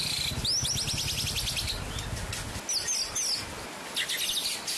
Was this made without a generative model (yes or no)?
yes